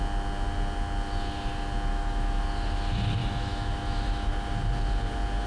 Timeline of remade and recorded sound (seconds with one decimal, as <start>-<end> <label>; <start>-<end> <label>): 0.0-1.9 recorded; 1.9-2.4 remade; 2.4-3.2 recorded; 3.2-4.3 remade; 4.3-5.5 recorded